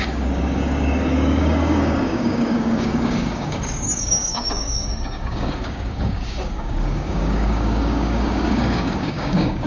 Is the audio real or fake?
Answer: fake